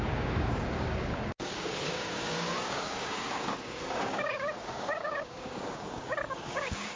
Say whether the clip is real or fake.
fake